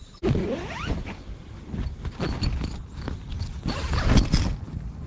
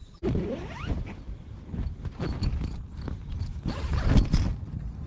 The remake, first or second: second